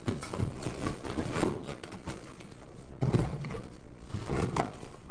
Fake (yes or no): yes